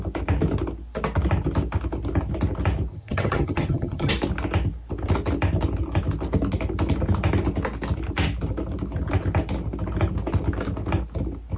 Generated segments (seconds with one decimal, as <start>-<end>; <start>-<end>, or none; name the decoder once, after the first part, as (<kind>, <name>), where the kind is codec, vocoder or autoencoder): 2.9-4.1 (vocoder, HiFi-GAN)